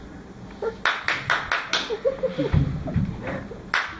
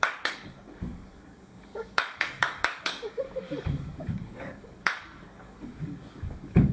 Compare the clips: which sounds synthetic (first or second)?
second